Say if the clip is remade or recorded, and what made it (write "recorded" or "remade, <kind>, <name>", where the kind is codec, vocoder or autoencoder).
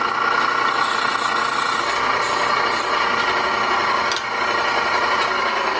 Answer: recorded